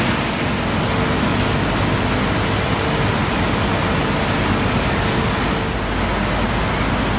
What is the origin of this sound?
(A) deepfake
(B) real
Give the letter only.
B